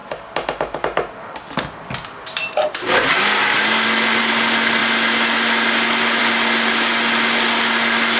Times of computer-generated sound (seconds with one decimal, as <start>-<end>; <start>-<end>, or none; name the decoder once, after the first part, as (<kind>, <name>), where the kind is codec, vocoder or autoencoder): none